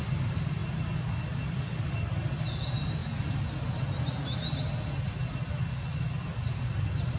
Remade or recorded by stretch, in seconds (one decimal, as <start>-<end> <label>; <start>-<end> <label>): 0.0-7.2 recorded